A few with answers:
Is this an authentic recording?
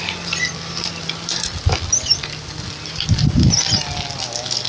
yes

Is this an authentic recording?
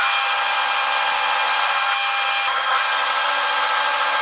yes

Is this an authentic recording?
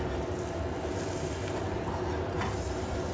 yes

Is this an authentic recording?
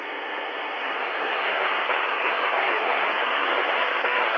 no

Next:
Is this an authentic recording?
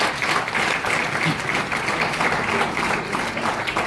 yes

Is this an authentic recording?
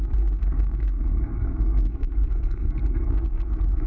no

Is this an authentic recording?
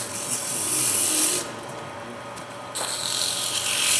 yes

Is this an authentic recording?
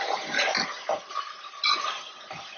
yes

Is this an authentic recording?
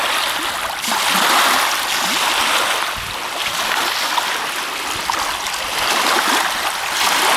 yes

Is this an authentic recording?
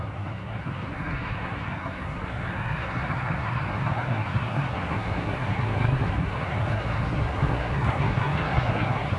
no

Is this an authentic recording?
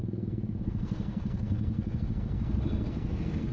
no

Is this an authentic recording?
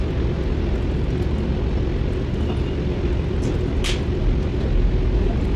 yes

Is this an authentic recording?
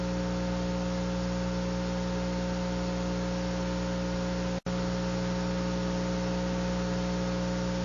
yes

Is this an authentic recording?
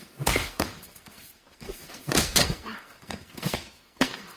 no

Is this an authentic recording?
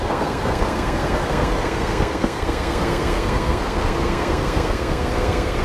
no